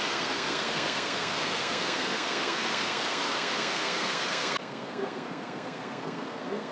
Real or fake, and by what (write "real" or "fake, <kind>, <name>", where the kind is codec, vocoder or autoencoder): fake, codec, SNAC